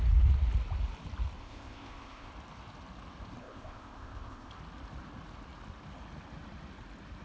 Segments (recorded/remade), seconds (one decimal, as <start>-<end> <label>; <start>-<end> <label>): 0.0-1.4 recorded; 1.4-2.3 remade; 2.3-3.4 recorded; 3.4-4.5 remade; 4.5-7.2 recorded